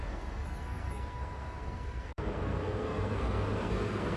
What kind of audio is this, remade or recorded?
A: remade